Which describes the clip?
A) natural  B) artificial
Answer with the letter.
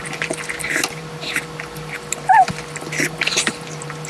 A